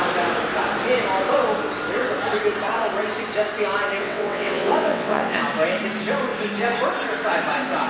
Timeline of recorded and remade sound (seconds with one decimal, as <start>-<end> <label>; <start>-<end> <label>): 0.0-4.0 recorded; 4.0-5.4 remade; 5.4-7.9 recorded

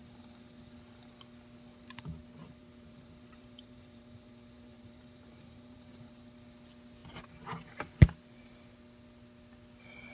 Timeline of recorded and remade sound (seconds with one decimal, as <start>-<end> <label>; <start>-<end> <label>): 0.0-2.4 recorded; 2.4-6.1 remade; 6.1-10.1 recorded

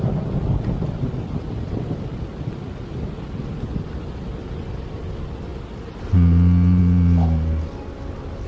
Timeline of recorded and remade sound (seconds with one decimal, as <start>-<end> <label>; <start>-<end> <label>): 0.0-8.5 recorded

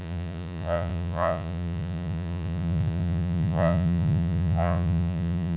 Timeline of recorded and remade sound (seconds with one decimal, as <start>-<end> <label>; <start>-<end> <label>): 0.0-5.6 remade